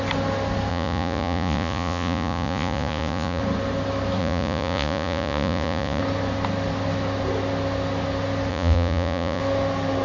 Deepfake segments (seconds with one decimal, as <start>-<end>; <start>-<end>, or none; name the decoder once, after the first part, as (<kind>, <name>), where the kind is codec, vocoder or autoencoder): 0.7-3.4 (vocoder, Vocos); 4.2-6.0; 8.5-9.4